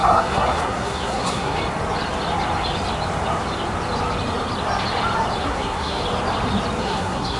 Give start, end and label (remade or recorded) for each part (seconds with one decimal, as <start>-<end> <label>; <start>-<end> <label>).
0.0-1.6 remade; 1.6-5.4 recorded; 5.4-6.0 remade; 6.0-6.8 recorded; 6.8-7.4 remade